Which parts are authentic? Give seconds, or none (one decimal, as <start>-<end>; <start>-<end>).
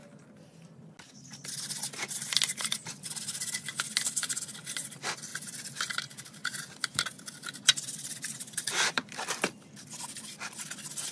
0.0-5.3; 10.1-11.1